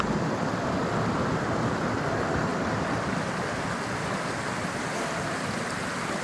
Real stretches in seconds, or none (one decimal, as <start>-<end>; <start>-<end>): 0.0-6.2

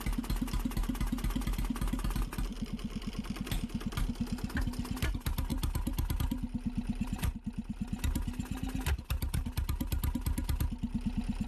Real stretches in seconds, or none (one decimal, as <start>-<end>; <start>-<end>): 0.0-2.5; 3.4-11.5

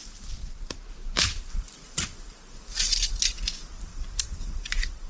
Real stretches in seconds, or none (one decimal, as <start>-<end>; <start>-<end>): 3.1-3.9

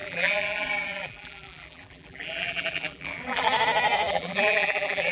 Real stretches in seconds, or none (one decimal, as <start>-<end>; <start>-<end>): 3.5-4.1

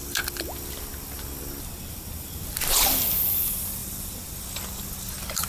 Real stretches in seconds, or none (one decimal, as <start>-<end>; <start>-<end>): 0.0-1.7; 2.4-5.5

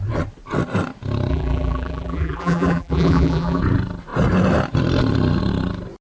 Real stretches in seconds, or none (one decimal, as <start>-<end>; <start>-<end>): 0.0-1.3; 3.6-6.0